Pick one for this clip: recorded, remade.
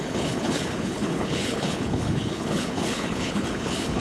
remade